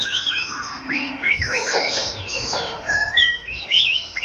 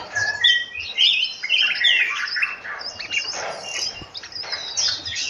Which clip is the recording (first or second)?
second